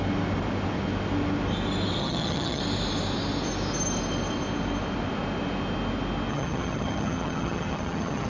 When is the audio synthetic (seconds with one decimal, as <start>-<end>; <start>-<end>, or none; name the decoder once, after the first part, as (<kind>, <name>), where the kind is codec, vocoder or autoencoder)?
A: 2.0-2.6 (vocoder, HiFi-GAN); 6.3-8.3